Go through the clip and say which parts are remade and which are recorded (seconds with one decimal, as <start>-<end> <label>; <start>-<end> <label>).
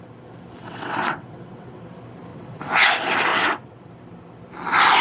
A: 0.0-0.6 recorded; 0.6-1.8 remade; 1.8-2.3 recorded; 2.3-2.9 remade; 2.9-3.3 recorded; 3.3-3.9 remade; 3.9-5.0 recorded